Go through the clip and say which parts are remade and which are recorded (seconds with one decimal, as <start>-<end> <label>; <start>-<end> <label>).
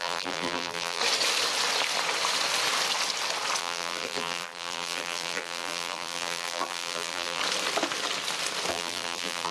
0.0-1.0 remade; 1.0-3.6 recorded; 3.6-7.4 remade; 7.4-8.7 recorded; 8.7-9.5 remade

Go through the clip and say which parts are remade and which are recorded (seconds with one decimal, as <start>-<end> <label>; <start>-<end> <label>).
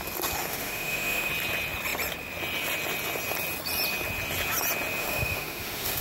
0.0-0.5 recorded; 0.5-1.3 remade; 1.3-5.0 recorded; 5.0-6.0 remade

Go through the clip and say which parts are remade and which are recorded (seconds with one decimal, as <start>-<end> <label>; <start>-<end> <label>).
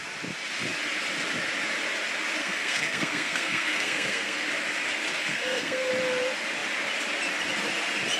0.0-2.4 recorded; 2.4-4.5 remade; 4.5-5.2 recorded; 5.2-5.9 remade; 5.9-8.2 recorded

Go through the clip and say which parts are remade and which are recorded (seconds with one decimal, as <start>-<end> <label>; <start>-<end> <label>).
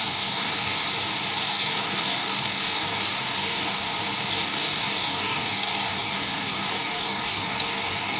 0.0-0.8 remade; 0.8-1.4 recorded; 1.4-3.8 remade; 3.8-4.3 recorded; 4.3-8.2 remade